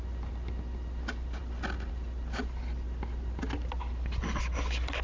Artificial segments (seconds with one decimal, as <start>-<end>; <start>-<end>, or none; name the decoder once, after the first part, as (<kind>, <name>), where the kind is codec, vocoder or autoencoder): none